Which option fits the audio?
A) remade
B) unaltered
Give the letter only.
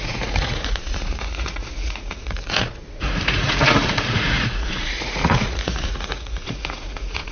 A